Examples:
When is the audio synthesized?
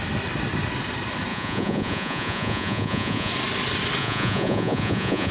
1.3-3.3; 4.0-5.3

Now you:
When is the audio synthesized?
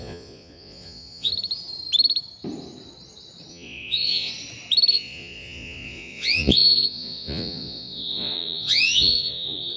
0.0-1.3; 3.5-4.3; 4.9-9.8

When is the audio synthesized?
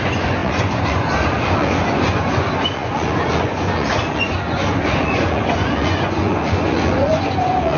0.0-7.8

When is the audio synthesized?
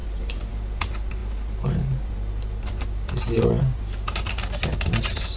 none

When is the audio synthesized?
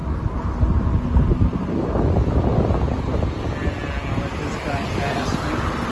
none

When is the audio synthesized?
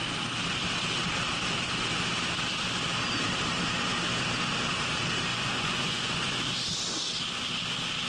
5.3-6.4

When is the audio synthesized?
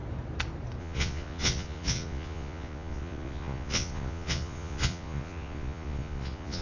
0.8-6.6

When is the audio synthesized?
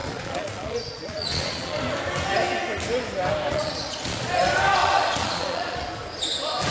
0.0-1.8; 3.5-4.3; 4.8-5.9